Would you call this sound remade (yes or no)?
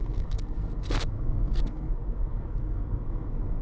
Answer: yes